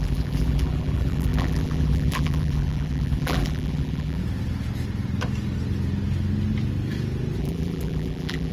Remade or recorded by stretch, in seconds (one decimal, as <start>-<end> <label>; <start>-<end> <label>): 0.0-4.2 remade; 4.2-7.4 recorded; 7.4-8.5 remade